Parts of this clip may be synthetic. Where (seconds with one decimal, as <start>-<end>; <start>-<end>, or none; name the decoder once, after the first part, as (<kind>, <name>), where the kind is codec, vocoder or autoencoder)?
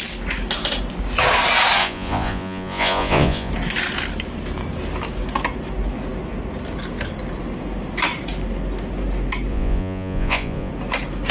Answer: 1.8-3.5 (vocoder, Vocos); 9.5-10.7